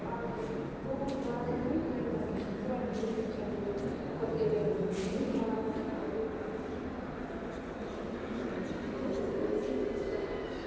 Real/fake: real